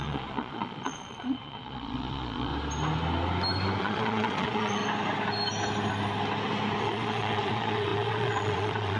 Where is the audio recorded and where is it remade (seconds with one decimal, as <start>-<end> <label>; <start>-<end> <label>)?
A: 0.0-2.5 remade; 2.5-3.8 recorded; 3.8-4.8 remade; 4.8-6.8 recorded; 6.8-9.0 remade

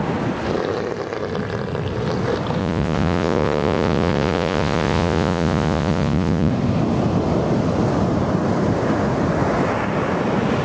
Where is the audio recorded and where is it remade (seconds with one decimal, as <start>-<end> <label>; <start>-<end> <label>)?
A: 0.0-2.6 recorded; 2.6-6.5 remade; 6.5-10.6 recorded

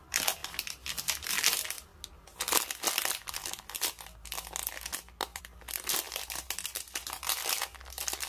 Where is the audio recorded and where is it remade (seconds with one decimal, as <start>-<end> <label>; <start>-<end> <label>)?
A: 0.0-8.3 recorded

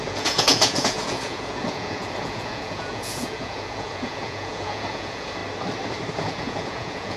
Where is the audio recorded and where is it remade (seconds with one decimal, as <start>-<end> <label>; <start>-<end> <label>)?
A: 0.0-5.4 remade; 5.4-6.1 recorded; 6.1-7.2 remade

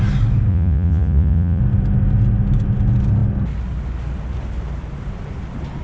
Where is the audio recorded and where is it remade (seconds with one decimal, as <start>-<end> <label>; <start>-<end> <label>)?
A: 0.0-0.5 recorded; 0.5-1.6 remade; 1.6-5.8 recorded

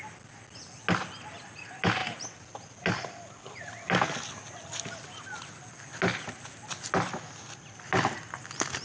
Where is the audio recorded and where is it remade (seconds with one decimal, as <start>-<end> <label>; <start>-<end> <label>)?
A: 0.0-8.8 recorded

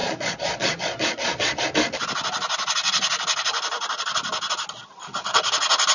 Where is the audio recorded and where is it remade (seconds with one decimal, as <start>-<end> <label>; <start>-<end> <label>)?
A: 0.0-1.6 remade; 1.6-5.9 recorded

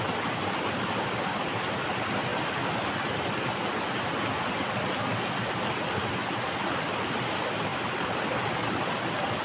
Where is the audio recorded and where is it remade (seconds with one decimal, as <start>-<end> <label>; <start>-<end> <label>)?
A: 0.0-9.4 recorded